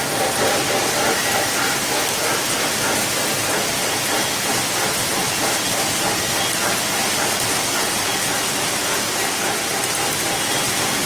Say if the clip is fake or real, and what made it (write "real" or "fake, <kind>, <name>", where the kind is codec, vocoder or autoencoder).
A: real